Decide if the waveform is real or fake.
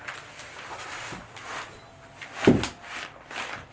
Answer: real